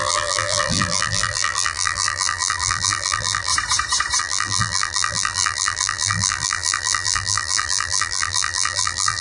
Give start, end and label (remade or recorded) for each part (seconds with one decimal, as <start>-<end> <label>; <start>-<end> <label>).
0.0-3.5 remade; 3.5-4.2 recorded; 4.2-9.2 remade